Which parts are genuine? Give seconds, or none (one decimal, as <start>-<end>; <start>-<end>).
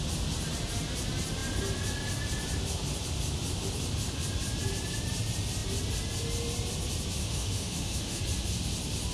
0.0-7.2; 8.2-9.1